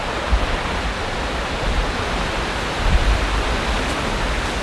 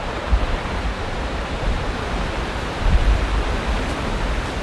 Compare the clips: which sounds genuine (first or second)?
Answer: first